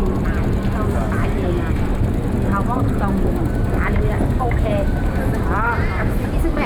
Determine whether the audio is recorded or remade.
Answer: recorded